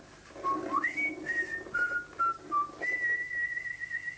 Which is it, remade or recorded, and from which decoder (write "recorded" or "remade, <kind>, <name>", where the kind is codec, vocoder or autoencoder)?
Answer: recorded